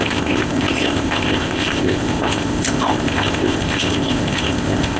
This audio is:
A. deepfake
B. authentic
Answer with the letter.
A